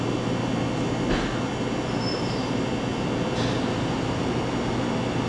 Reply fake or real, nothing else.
real